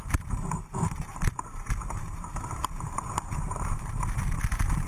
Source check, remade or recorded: remade